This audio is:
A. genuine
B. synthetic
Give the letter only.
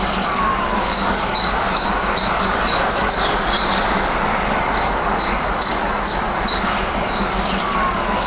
B